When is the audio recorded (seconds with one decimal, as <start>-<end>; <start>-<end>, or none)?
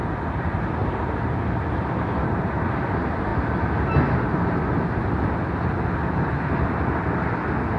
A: 0.0-7.8